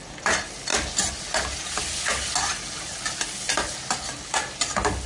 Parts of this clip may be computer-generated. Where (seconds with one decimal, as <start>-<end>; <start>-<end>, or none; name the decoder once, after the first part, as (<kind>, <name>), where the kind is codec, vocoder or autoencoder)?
none